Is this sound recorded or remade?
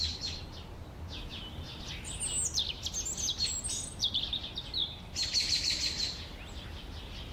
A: recorded